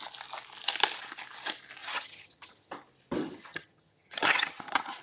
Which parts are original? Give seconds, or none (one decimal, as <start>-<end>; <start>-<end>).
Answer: 0.0-1.8; 2.7-3.2